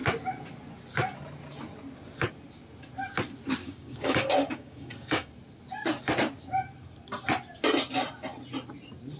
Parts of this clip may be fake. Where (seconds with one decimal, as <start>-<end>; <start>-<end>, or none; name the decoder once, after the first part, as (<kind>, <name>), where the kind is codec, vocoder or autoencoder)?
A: 3.6-5.3 (codec, DAC)